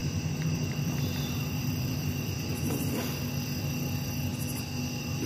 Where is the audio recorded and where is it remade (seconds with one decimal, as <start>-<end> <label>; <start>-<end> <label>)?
0.0-3.2 remade; 3.2-5.3 recorded